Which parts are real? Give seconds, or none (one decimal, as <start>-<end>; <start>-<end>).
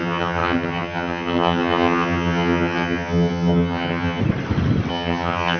4.2-4.9